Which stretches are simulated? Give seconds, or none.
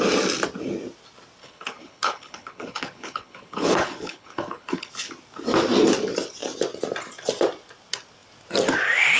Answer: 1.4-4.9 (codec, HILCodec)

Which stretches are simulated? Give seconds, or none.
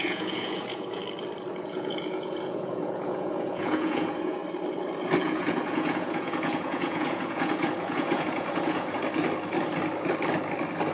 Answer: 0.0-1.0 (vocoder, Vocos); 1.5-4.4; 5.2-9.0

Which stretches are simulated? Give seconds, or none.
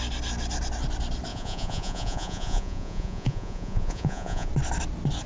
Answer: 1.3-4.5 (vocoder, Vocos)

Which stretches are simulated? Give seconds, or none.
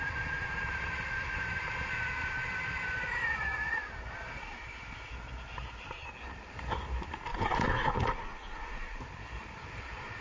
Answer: 7.3-9.0 (vocoder, Vocos)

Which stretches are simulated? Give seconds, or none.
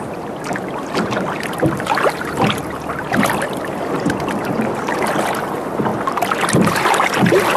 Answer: none